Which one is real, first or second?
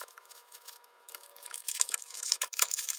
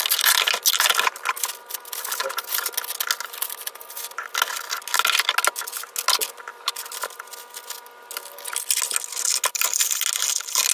second